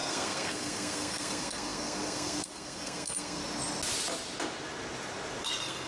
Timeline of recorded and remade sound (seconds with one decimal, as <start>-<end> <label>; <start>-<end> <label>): 0.0-3.4 remade; 3.4-5.4 recorded; 5.4-5.9 remade